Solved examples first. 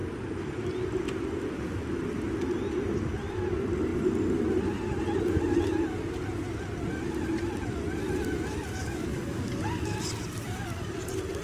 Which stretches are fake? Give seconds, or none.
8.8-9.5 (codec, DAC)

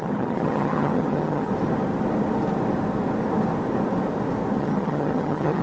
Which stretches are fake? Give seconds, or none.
0.0-1.5 (vocoder, HiFi-GAN); 4.6-5.6